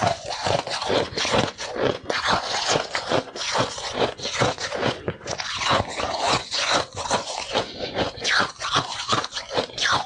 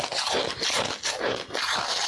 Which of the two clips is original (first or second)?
second